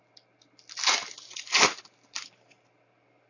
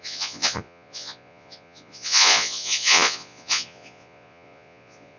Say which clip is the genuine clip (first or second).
first